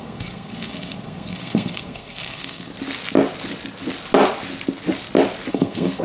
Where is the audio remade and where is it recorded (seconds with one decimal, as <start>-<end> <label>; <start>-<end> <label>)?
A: 0.0-2.7 remade; 2.7-5.5 recorded; 5.5-6.0 remade